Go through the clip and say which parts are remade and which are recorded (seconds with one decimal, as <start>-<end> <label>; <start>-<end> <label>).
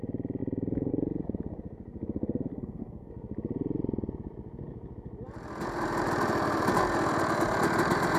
0.0-2.5 recorded; 2.5-3.1 remade; 3.1-8.2 recorded